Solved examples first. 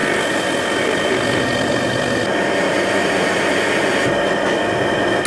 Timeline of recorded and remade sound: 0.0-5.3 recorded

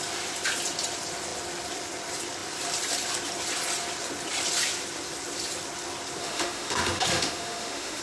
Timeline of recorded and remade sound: 0.0-6.2 recorded; 6.2-8.0 remade

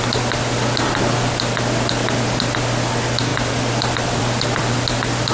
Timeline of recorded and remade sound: 0.0-5.3 recorded

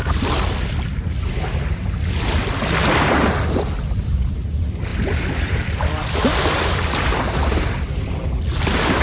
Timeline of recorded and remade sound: 0.0-4.3 remade; 4.3-4.9 recorded; 4.9-8.4 remade; 8.4-9.0 recorded

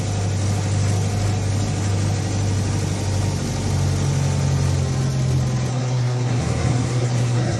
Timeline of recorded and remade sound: 0.0-5.7 recorded; 5.7-7.6 remade

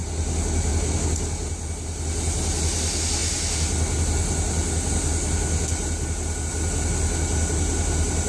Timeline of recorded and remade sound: 0.0-8.3 recorded